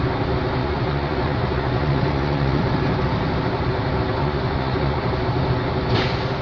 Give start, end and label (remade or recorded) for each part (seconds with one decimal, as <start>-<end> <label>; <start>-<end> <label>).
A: 0.0-0.6 recorded; 0.6-2.6 remade; 2.6-4.2 recorded; 4.2-5.0 remade; 5.0-6.4 recorded